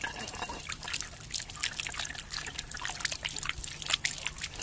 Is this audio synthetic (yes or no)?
no